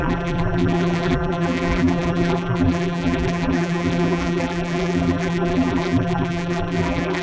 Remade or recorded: remade